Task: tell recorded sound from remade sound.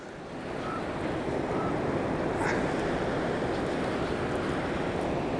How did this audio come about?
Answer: recorded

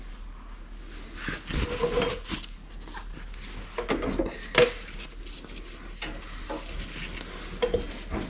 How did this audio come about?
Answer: recorded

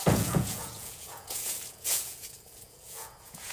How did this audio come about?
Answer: remade